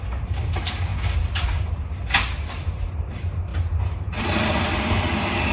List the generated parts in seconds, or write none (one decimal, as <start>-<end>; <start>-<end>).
0.0-0.9; 2.4-3.5; 4.2-5.5